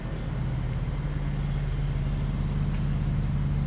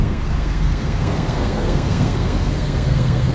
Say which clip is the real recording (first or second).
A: first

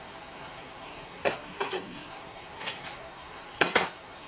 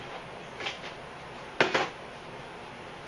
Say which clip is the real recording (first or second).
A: second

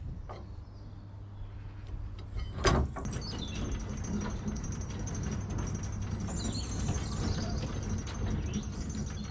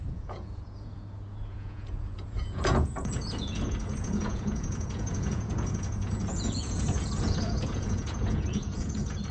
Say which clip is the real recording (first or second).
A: first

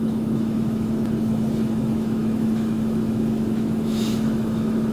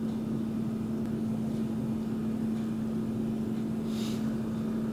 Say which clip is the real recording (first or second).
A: second